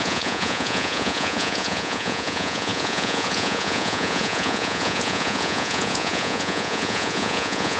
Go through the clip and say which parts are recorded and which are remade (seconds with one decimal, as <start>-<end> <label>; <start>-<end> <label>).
0.0-7.8 remade